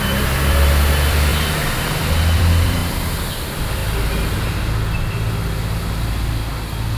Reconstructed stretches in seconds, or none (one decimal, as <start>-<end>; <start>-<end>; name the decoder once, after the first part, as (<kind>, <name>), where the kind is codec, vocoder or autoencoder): 0.0-3.8 (vocoder, BigVGAN v2)